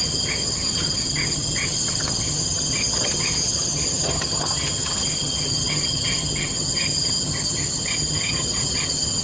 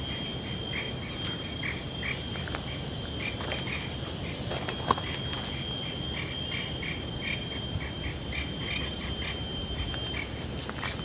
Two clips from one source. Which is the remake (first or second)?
first